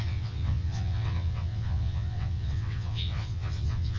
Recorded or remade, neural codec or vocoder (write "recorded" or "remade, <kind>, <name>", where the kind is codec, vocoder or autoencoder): remade, vocoder, WaveNeXt